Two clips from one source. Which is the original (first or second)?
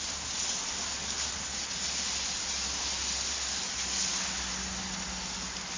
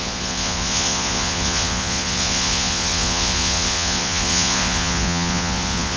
first